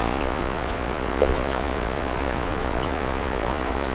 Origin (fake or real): fake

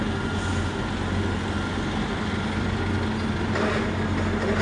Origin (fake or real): real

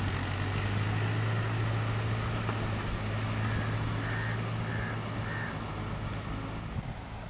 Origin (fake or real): real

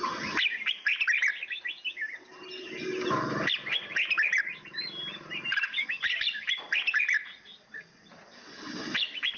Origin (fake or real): real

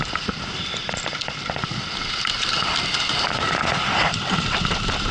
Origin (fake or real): fake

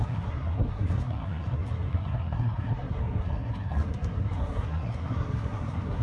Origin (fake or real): fake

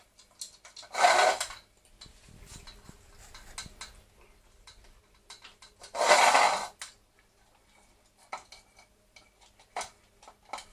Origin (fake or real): real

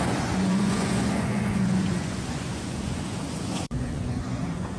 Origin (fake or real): fake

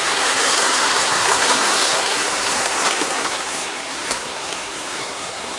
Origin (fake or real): fake